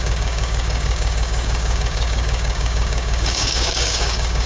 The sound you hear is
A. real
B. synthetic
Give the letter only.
B